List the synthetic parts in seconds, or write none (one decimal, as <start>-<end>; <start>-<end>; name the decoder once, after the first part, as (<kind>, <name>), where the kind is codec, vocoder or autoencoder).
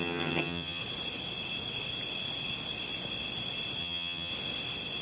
0.0-0.8 (vocoder, HiFi-GAN); 3.8-4.3